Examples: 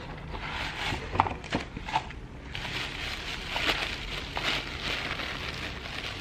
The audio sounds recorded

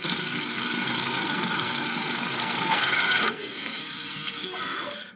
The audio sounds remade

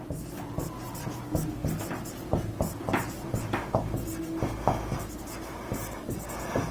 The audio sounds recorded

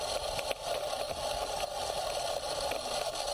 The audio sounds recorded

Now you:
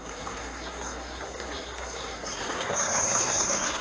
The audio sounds remade